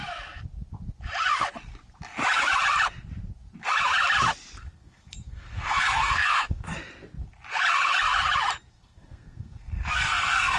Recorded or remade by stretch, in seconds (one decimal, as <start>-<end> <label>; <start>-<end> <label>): 0.0-4.6 recorded; 4.6-6.7 remade; 6.7-8.7 recorded; 8.7-10.6 remade